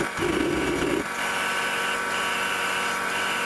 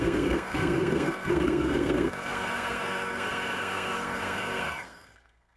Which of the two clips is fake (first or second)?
second